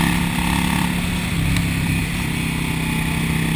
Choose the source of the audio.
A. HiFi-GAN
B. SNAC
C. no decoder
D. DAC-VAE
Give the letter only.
C